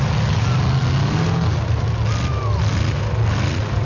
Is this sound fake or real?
real